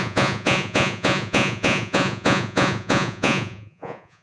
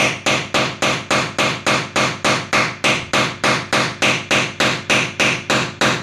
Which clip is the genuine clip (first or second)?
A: second